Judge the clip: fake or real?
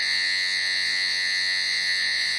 fake